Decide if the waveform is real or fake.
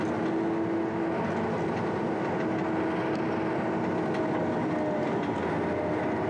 real